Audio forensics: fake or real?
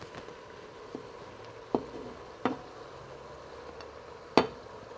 real